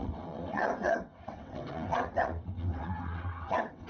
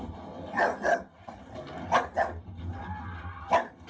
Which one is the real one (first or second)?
second